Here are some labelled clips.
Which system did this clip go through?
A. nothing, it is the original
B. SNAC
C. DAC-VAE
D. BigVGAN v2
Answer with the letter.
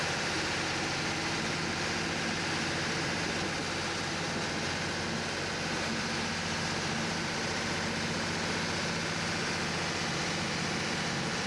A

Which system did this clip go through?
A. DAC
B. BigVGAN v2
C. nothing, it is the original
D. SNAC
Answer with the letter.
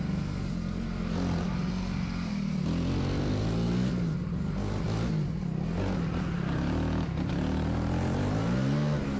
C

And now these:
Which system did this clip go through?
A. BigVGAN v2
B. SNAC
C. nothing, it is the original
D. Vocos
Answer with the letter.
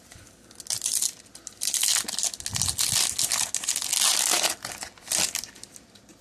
C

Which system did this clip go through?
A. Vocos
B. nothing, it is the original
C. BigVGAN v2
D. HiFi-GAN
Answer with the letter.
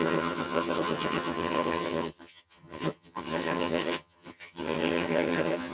D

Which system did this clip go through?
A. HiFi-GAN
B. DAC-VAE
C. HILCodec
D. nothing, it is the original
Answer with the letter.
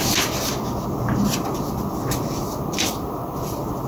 D